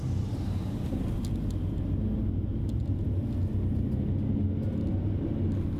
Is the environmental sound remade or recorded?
recorded